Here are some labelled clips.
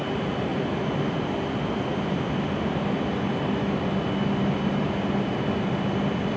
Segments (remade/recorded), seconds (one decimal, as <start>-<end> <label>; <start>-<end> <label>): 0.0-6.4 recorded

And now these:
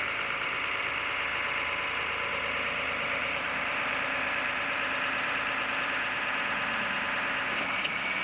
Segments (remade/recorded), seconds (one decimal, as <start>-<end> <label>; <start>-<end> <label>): 0.0-3.2 recorded; 3.2-7.1 remade; 7.1-8.2 recorded

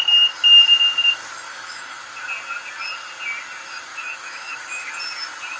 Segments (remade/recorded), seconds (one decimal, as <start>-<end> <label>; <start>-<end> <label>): 0.0-1.5 recorded; 1.5-2.0 remade; 2.0-3.9 recorded; 3.9-4.9 remade; 4.9-5.6 recorded

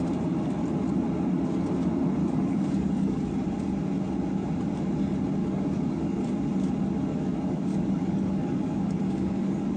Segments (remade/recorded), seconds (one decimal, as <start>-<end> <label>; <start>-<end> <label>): 0.0-2.2 recorded; 2.2-3.3 remade; 3.3-5.4 recorded; 5.4-6.2 remade; 6.2-7.1 recorded; 7.1-9.8 remade

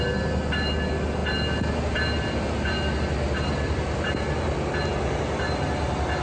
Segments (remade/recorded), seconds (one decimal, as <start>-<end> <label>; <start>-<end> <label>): 0.0-6.2 recorded